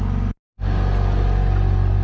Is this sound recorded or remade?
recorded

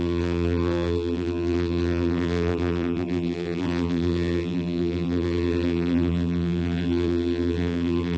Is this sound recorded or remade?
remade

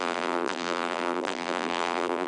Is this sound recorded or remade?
remade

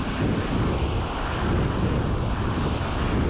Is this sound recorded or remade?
recorded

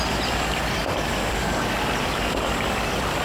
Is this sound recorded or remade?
recorded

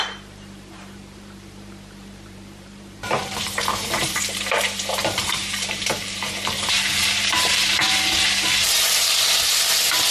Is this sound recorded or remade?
remade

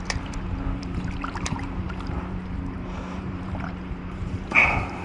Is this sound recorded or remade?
remade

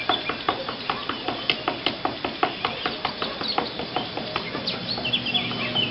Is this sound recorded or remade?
recorded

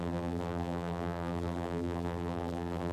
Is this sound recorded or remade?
remade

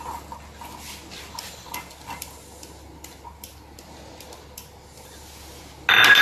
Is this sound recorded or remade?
recorded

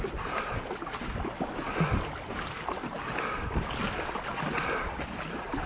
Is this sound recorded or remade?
recorded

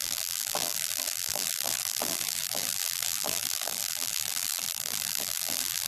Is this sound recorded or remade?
remade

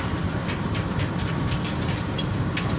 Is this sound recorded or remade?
recorded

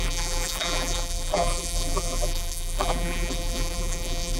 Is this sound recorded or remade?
remade